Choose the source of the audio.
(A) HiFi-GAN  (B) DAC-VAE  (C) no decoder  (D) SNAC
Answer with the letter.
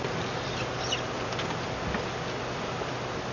C